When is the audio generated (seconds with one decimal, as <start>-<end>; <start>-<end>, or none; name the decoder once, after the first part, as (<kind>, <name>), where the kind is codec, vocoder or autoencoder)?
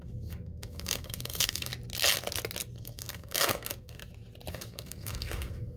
0.0-1.7 (codec, SNAC); 2.8-4.0; 4.5-5.8